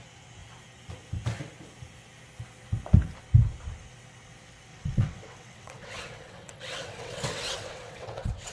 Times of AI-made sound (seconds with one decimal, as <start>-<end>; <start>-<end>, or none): 4.7-8.5